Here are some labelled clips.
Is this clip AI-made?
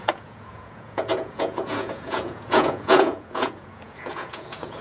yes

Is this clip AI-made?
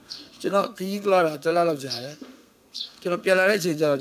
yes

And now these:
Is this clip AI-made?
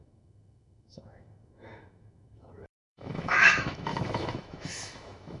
yes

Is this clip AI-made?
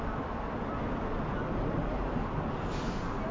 no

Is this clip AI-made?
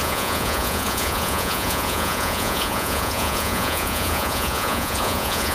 yes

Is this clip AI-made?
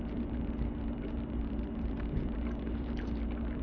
yes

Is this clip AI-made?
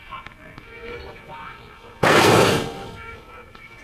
yes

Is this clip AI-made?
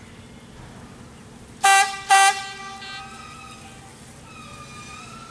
no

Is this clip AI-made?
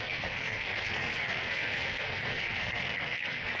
yes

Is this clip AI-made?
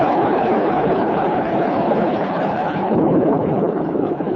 yes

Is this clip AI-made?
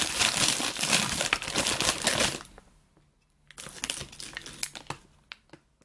no